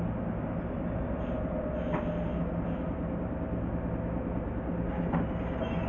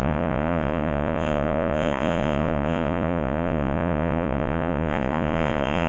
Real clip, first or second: first